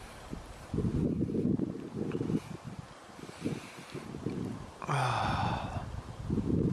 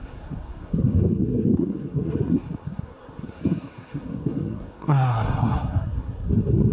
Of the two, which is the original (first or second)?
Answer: first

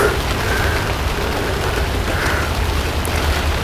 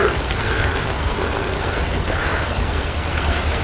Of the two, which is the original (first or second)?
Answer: first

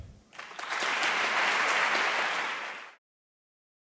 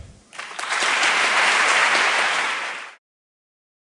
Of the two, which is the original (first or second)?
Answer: first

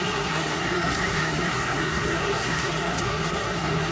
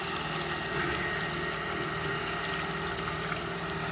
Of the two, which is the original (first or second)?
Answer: second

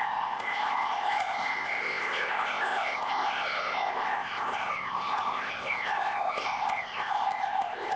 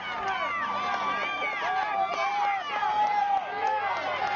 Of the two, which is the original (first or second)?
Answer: second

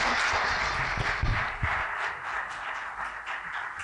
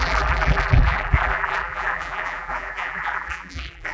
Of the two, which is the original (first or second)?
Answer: first